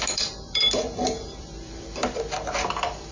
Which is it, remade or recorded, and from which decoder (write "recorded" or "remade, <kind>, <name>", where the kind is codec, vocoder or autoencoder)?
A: remade, vocoder, BigVGAN v2